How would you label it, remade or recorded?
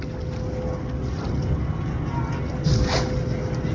recorded